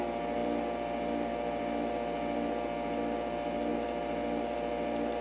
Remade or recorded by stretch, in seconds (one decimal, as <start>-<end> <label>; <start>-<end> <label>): 0.0-5.2 recorded